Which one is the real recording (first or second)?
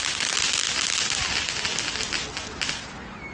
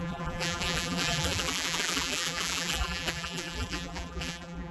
first